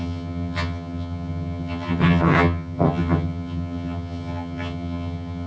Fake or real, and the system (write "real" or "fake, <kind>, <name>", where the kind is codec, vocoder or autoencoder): fake, vocoder, HiFi-GAN